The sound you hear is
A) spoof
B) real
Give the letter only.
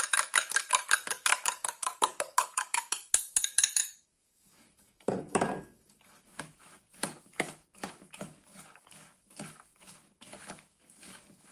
A